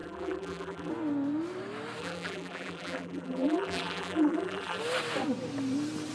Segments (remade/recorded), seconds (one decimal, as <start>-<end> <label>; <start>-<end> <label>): 0.0-0.9 remade; 0.9-2.0 recorded; 2.0-4.8 remade; 4.8-6.1 recorded